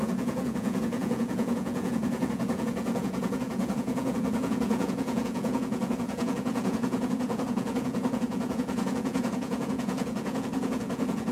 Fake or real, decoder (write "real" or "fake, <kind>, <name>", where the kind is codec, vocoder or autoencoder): fake, vocoder, Vocos